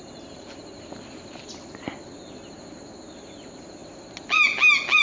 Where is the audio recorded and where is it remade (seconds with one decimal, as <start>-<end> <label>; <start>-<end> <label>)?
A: 0.0-5.0 recorded